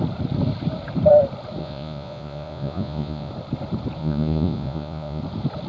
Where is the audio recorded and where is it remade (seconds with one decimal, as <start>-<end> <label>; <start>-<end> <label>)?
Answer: 0.0-1.6 recorded; 1.6-3.3 remade; 3.3-4.0 recorded; 4.0-5.2 remade; 5.2-5.7 recorded